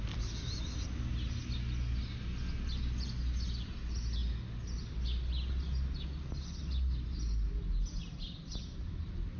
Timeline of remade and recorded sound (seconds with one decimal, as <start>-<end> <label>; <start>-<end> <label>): 0.0-9.4 recorded

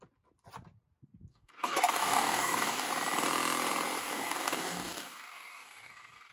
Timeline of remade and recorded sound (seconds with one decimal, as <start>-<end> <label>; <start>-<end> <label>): 0.0-1.3 recorded; 1.3-2.9 remade; 2.9-4.0 recorded; 4.0-6.3 remade

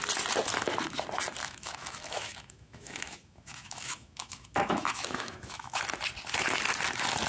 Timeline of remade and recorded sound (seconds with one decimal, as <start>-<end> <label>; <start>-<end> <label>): 0.0-1.4 recorded; 1.4-5.8 remade; 5.8-7.3 recorded

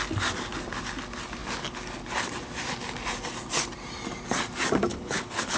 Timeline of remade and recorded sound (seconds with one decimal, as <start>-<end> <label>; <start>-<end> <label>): 0.0-4.9 recorded; 4.9-5.6 remade

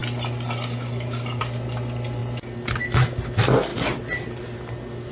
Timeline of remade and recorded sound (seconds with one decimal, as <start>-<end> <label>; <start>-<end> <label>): 0.0-5.1 recorded

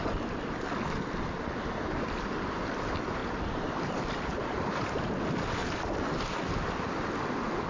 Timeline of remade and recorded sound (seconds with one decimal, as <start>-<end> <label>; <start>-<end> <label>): 0.0-7.7 recorded

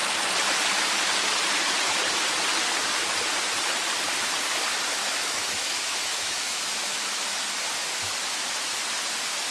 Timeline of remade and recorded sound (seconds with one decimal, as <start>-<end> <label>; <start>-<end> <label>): 0.0-5.0 recorded; 5.0-7.6 remade; 7.6-9.5 recorded

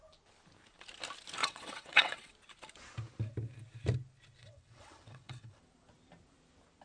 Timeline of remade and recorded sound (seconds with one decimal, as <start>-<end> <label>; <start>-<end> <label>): 0.0-1.4 recorded; 1.4-2.3 remade; 2.3-4.4 recorded; 4.4-5.6 remade; 5.6-6.8 recorded